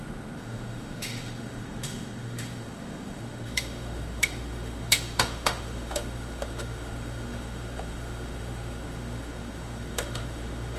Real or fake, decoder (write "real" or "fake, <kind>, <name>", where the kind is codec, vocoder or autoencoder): fake, autoencoder, DAC-VAE